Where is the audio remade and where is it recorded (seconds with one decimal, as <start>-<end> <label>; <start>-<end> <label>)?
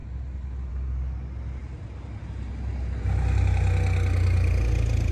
0.0-5.1 recorded